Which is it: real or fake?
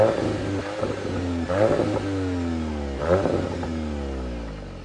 real